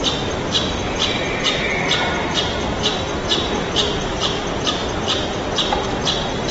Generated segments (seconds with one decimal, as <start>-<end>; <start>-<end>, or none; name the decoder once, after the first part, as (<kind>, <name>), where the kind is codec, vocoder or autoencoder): none